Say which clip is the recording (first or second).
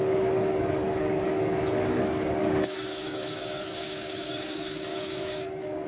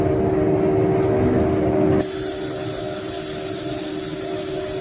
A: second